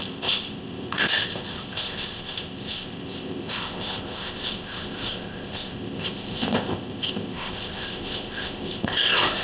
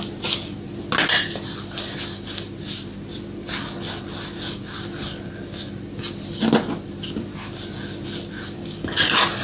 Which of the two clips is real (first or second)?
second